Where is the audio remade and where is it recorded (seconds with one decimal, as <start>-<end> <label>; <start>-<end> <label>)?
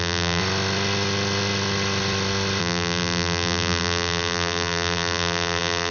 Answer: 0.0-0.4 remade; 0.4-2.6 recorded; 2.6-5.9 remade